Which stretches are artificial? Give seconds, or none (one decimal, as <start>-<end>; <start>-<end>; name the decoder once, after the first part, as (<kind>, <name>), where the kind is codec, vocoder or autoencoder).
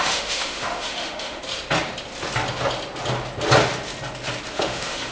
0.0-1.4 (autoencoder, DAC-VAE); 4.5-5.1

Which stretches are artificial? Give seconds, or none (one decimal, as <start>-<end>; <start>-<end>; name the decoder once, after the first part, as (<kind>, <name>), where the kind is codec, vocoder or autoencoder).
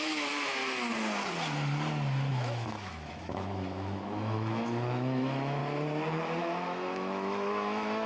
0.0-0.6 (autoencoder, DAC-VAE); 2.3-5.6; 6.4-8.1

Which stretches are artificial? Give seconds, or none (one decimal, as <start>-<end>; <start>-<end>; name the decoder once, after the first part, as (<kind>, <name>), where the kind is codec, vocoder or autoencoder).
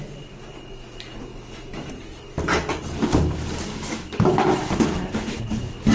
1.3-1.9 (autoencoder, DAC-VAE); 3.7-5.4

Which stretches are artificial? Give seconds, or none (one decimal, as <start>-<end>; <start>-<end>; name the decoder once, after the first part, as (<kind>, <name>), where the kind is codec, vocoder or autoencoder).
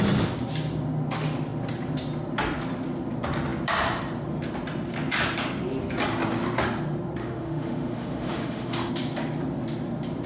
7.2-8.9 (autoencoder, DAC-VAE)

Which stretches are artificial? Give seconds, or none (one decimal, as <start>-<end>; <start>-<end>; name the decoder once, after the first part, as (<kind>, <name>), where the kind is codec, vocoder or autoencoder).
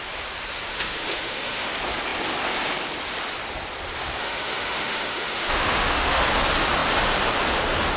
0.7-1.7 (autoencoder, DAC-VAE); 4.2-6.2